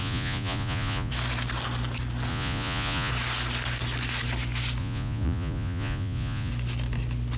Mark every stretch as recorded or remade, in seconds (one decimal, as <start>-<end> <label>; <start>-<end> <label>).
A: 0.0-1.1 remade; 1.1-2.3 recorded; 2.3-3.1 remade; 3.1-4.8 recorded; 4.8-6.5 remade; 6.5-7.4 recorded